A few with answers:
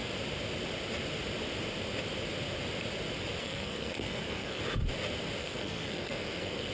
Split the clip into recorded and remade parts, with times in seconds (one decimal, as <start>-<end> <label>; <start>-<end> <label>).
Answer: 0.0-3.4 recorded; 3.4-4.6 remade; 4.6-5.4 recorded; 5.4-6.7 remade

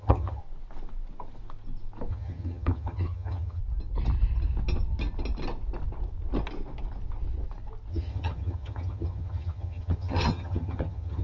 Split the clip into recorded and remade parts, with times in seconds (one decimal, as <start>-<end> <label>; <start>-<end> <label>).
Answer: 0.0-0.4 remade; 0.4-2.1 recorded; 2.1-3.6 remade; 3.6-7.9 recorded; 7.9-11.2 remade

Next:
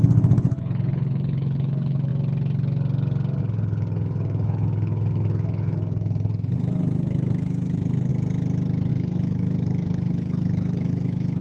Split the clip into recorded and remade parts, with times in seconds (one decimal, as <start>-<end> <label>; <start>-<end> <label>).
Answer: 0.0-2.1 remade; 2.1-3.4 recorded; 3.4-8.1 remade; 8.1-8.9 recorded; 8.9-11.4 remade

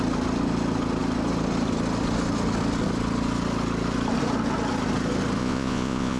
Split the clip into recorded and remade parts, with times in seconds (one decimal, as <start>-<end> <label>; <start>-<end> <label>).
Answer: 0.0-5.4 recorded; 5.4-6.2 remade

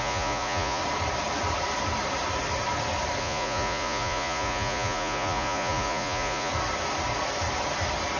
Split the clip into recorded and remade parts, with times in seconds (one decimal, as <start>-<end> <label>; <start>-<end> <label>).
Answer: 0.0-0.8 remade; 0.8-3.2 recorded; 3.2-6.5 remade; 6.5-8.2 recorded

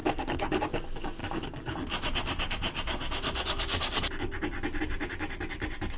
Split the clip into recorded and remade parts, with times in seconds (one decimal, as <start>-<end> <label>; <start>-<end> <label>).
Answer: 0.0-0.6 remade; 0.6-6.0 recorded

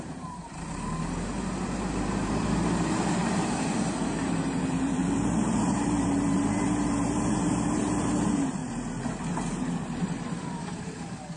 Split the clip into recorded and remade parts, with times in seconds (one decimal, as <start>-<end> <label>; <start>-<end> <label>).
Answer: 0.0-8.6 remade; 8.6-9.5 recorded; 9.5-11.4 remade

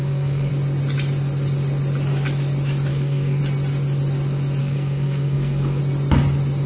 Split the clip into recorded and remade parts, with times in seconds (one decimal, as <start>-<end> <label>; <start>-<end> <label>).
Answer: 0.0-0.5 remade; 0.5-2.9 recorded; 2.9-3.4 remade; 3.4-4.6 recorded; 4.6-5.8 remade; 5.8-6.7 recorded